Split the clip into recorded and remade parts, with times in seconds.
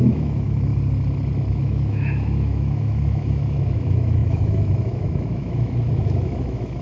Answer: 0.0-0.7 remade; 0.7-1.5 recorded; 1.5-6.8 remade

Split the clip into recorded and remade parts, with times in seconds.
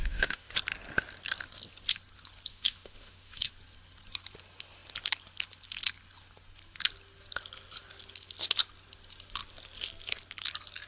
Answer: 0.0-0.5 remade; 0.5-2.5 recorded; 2.5-3.5 remade; 3.5-10.9 recorded